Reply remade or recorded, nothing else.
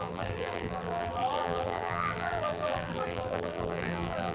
remade